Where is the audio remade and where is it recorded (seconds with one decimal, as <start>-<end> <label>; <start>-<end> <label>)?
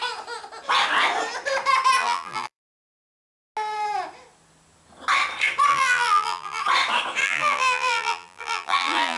0.0-2.0 recorded; 2.0-3.2 remade; 3.2-5.7 recorded; 5.7-6.6 remade; 6.6-7.2 recorded; 7.2-9.2 remade